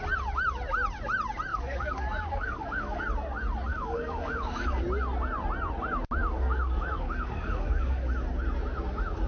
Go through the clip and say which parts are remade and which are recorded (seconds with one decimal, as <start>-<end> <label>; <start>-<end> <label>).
0.0-1.5 recorded; 1.5-3.0 remade; 3.0-3.7 recorded; 3.7-4.8 remade; 4.8-6.2 recorded; 6.2-8.1 remade; 8.1-9.3 recorded